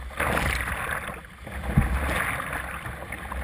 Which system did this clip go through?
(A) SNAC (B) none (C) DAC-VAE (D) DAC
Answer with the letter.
B